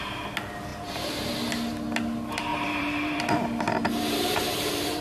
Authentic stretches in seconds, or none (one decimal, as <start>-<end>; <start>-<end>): 0.0-0.7; 1.3-2.5; 3.2-3.8